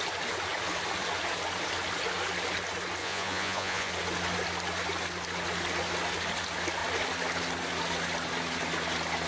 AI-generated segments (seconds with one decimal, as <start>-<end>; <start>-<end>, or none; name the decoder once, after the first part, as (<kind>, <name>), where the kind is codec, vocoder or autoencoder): 3.0-3.9 (vocoder, Vocos)